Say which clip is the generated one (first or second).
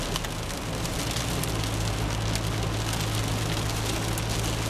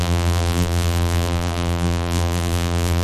second